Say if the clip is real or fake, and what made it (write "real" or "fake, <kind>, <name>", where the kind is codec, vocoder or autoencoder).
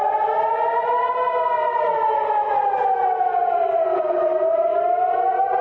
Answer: real